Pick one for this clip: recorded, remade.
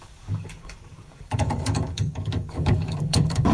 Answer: remade